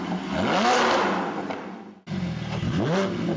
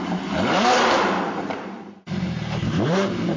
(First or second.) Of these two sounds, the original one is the first